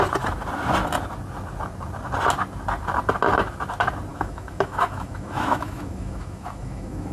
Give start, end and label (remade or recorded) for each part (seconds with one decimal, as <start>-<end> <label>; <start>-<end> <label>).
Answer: 0.0-4.1 recorded; 4.1-7.1 remade